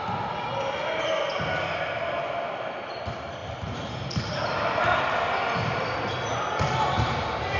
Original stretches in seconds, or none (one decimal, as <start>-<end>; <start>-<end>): 0.0-7.6